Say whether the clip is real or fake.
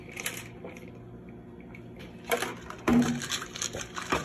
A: real